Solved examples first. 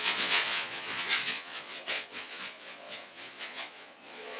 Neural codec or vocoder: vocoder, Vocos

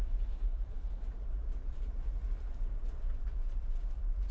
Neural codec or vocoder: vocoder, BigVGAN v2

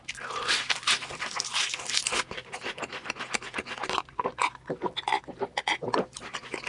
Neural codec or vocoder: none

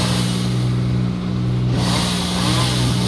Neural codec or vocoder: none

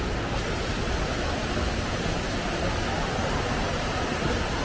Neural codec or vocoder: none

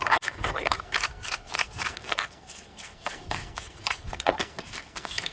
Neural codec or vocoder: codec, SNAC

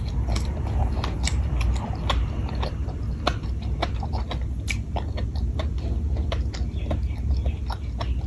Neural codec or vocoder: none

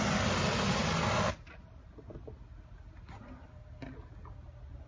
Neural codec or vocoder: none